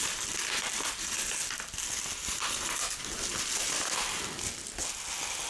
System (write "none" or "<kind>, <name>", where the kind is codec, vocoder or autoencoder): none